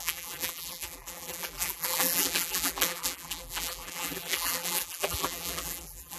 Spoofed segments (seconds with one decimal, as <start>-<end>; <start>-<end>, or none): 0.0-6.2